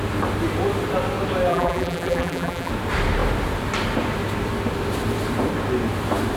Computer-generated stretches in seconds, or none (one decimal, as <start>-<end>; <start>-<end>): 1.5-2.7